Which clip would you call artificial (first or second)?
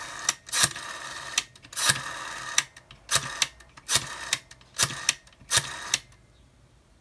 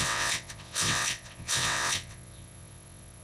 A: second